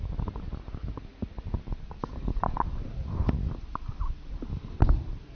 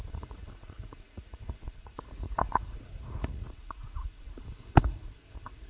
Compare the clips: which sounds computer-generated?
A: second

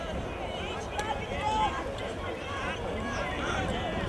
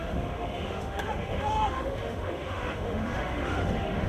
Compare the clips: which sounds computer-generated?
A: second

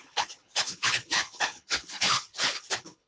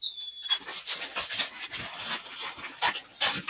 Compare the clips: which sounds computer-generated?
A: first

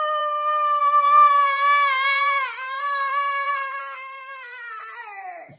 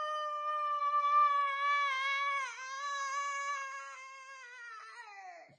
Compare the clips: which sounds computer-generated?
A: first